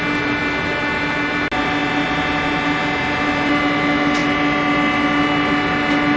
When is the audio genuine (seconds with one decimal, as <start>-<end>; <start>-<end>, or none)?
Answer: 0.0-6.2